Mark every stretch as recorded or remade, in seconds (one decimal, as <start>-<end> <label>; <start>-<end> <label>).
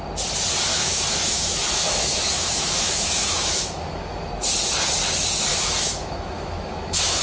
0.0-0.7 recorded; 0.7-4.3 remade; 4.3-5.5 recorded; 5.5-7.2 remade